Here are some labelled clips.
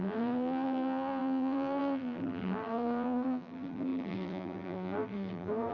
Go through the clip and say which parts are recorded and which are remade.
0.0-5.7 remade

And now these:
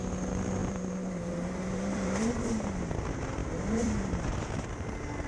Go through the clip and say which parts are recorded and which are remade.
0.0-0.6 recorded; 0.6-2.7 remade; 2.7-3.4 recorded; 3.4-4.7 remade; 4.7-5.3 recorded

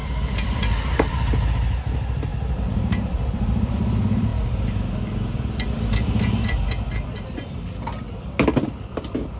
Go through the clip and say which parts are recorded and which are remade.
0.0-1.5 remade; 1.5-2.3 recorded; 2.3-3.7 remade; 3.7-9.4 recorded

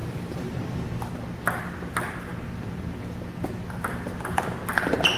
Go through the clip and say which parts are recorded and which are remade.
0.0-5.2 recorded

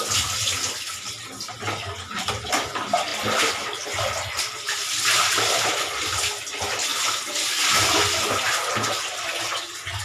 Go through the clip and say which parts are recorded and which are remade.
0.0-10.0 recorded

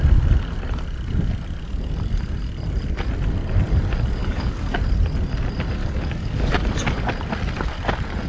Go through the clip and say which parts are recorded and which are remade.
0.0-4.2 recorded; 4.2-4.8 remade; 4.8-5.8 recorded; 5.8-6.5 remade; 6.5-8.3 recorded